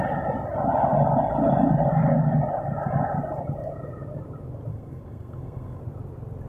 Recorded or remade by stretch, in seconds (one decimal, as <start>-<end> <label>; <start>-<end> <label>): 0.0-4.7 recorded; 4.7-5.8 remade; 5.8-6.5 recorded